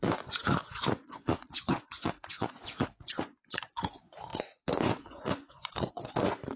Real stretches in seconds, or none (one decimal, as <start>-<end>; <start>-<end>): none